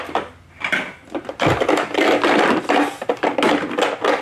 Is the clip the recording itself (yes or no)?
yes